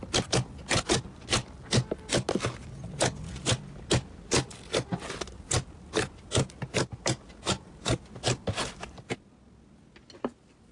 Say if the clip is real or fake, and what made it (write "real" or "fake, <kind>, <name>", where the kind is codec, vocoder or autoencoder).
real